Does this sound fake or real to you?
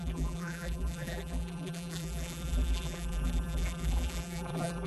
fake